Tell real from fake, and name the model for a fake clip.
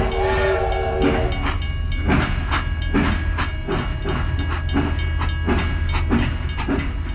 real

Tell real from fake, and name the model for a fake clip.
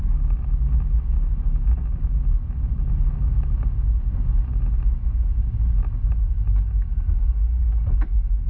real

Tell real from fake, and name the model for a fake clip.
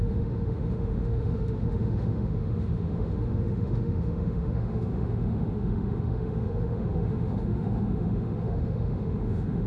fake, autoencoder, DAC-VAE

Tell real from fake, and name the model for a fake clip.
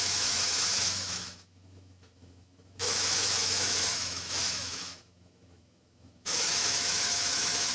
fake, autoencoder, DAC-VAE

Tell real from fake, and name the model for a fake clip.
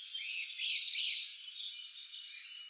real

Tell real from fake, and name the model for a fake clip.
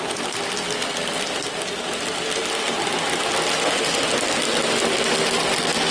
real